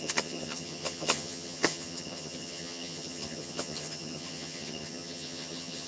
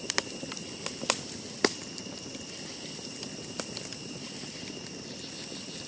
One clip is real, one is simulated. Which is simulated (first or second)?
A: first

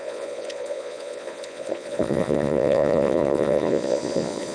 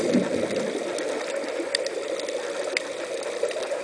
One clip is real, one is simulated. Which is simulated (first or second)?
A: first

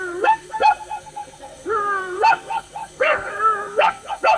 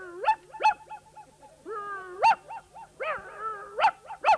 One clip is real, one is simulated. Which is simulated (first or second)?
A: first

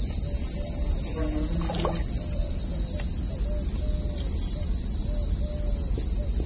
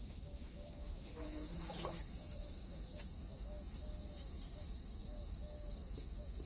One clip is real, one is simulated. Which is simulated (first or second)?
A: second